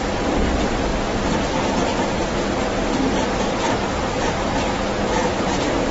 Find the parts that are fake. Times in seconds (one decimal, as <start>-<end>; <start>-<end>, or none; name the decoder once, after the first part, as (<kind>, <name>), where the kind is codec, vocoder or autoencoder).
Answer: 0.0-0.9 (vocoder, BigVGAN v2); 1.7-2.2